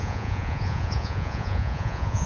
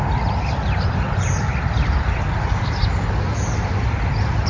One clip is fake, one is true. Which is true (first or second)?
second